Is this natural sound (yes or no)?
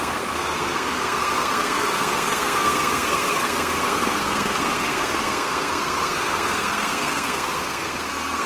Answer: no